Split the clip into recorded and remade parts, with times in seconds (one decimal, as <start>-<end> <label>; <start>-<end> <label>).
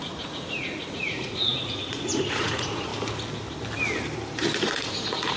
0.0-2.9 remade; 2.9-4.6 recorded; 4.6-5.4 remade